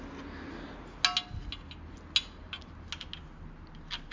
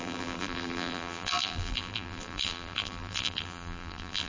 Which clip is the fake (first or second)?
second